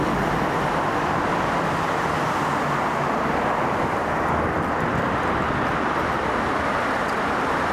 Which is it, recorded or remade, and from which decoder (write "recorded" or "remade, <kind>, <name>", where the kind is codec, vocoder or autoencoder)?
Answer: remade, vocoder, BigVGAN v2